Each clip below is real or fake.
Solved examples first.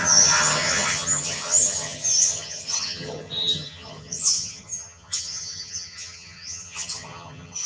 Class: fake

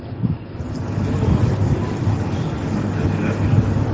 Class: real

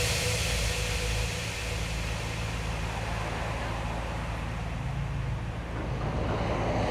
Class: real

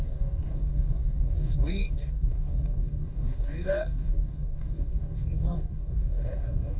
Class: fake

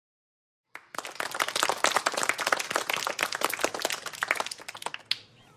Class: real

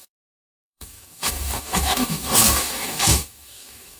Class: fake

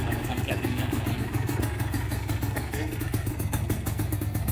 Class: fake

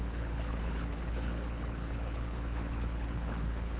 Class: fake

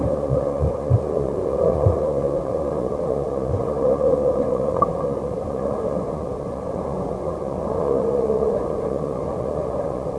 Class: fake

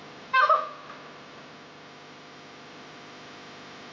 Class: real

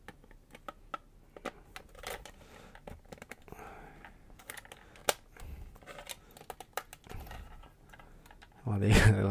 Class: real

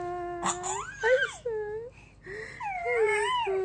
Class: real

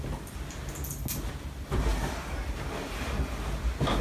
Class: real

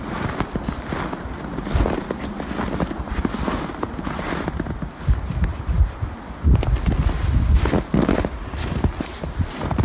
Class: real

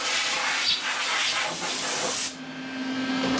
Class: real